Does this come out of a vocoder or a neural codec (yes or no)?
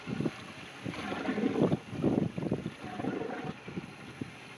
no